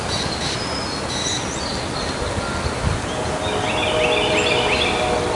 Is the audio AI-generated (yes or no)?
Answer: no